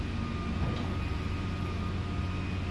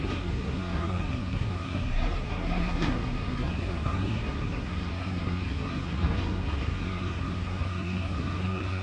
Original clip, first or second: first